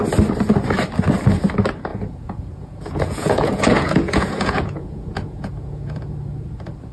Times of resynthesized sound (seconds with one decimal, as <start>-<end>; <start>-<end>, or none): 1.9-6.0

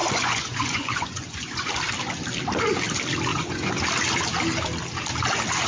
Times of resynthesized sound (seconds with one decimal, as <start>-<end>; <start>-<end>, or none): 0.0-1.7; 3.3-3.8

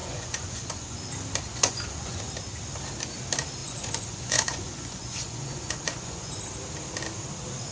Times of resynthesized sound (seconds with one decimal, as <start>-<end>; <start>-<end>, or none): 0.0-1.0; 1.5-2.3; 3.6-6.4